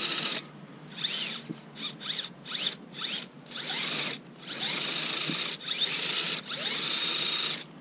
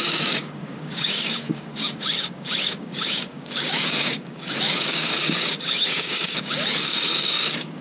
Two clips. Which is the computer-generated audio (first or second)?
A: second